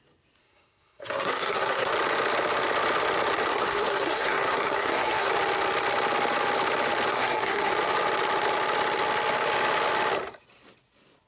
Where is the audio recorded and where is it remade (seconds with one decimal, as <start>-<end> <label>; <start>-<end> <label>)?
0.0-0.4 recorded; 0.4-1.9 remade; 1.9-3.5 recorded; 3.5-5.3 remade; 5.3-7.1 recorded; 7.1-7.7 remade; 7.7-11.3 recorded